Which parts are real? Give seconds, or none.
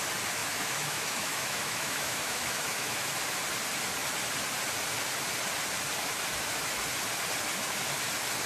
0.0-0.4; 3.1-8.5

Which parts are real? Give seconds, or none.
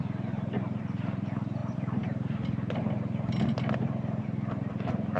0.0-5.2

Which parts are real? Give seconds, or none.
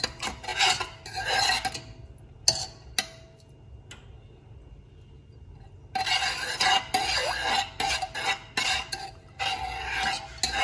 0.0-10.6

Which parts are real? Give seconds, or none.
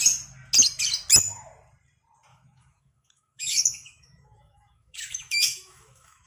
0.0-2.3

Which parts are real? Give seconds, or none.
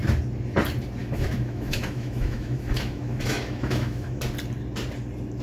0.0-1.0; 4.2-5.4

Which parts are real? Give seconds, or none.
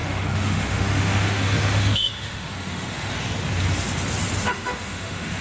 3.1-4.4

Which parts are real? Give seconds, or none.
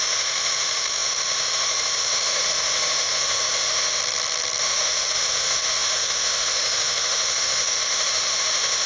4.0-4.6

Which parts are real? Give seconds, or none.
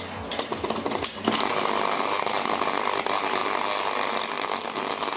0.0-5.2